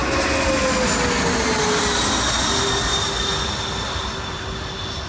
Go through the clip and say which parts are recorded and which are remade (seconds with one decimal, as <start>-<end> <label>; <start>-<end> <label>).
0.0-5.1 recorded